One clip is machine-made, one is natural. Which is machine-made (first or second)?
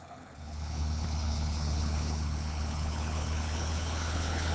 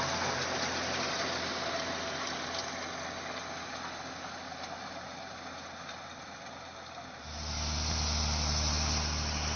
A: first